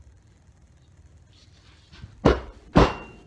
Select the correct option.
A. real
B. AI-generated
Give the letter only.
A